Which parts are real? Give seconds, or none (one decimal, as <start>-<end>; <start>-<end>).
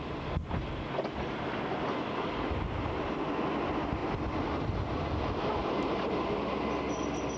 0.0-7.4